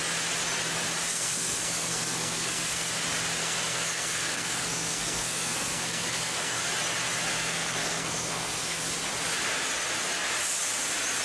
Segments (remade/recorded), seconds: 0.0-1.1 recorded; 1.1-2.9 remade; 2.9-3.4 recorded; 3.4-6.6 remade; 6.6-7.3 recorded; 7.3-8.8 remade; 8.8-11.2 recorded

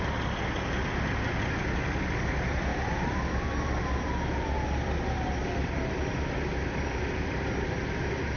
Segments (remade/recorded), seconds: 0.0-2.7 recorded; 2.7-3.2 remade; 3.2-8.4 recorded